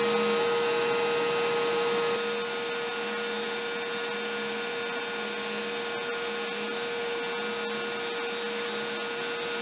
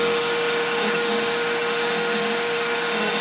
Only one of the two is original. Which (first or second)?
first